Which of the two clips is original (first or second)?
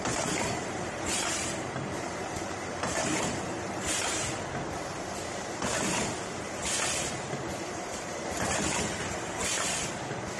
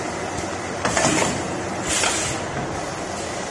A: second